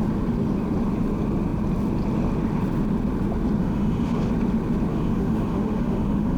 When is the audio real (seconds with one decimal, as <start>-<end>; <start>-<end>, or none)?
0.0-3.6; 4.3-4.9